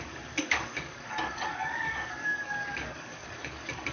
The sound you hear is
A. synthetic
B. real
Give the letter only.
A